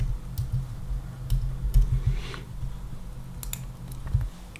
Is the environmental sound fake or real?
real